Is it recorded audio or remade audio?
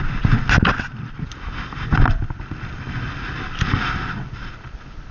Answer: recorded